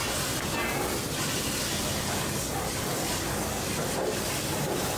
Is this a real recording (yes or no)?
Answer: yes